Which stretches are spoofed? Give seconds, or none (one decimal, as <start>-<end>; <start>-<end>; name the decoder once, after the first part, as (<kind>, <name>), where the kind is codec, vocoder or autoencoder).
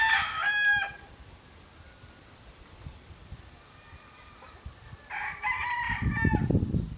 0.4-4.6 (vocoder, BigVGAN v2)